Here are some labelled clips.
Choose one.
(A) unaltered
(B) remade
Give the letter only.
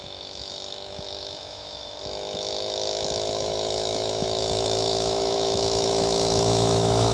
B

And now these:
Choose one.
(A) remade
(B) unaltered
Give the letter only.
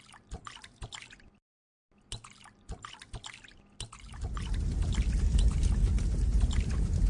B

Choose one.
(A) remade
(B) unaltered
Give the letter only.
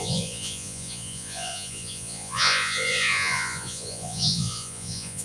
A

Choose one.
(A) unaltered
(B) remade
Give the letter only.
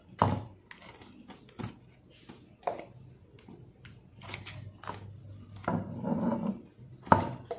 A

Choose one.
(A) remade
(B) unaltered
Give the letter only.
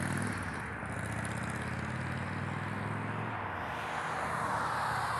B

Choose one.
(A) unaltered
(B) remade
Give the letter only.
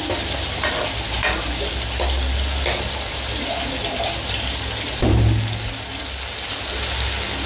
A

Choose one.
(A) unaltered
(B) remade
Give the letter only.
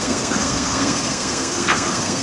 B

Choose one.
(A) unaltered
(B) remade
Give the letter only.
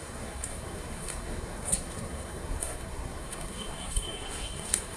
B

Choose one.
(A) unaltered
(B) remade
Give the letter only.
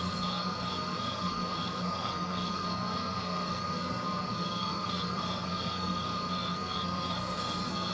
B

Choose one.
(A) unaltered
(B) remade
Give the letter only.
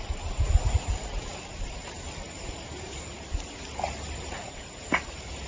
B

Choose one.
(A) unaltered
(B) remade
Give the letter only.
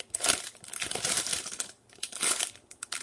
B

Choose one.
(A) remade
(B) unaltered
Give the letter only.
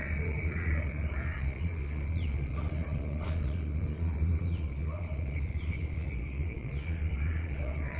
A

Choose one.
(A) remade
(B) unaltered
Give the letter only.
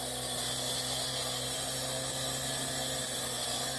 B